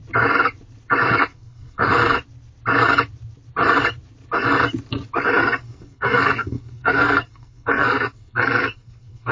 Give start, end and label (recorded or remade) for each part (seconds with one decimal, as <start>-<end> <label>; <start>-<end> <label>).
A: 0.0-1.2 recorded; 1.2-1.9 remade; 1.9-5.4 recorded; 5.4-9.3 remade